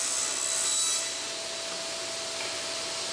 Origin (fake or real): real